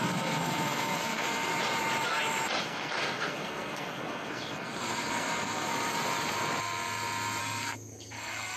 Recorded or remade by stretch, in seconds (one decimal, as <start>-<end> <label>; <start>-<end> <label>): 0.0-1.5 remade; 1.5-2.6 recorded; 2.6-5.7 remade; 5.7-7.4 recorded; 7.4-8.6 remade